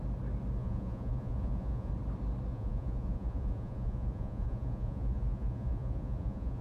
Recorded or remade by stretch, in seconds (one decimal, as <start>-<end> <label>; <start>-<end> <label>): 0.0-0.6 recorded; 0.6-1.9 remade; 1.9-2.5 recorded; 2.5-6.6 remade